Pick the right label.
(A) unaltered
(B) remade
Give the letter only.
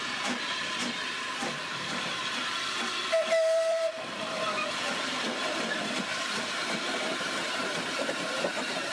B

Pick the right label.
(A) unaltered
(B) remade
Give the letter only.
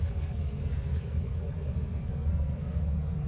B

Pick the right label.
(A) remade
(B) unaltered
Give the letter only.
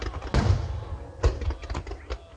B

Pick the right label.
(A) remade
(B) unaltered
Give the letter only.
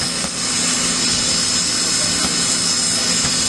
B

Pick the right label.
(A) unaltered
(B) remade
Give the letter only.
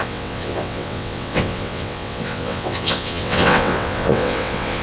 B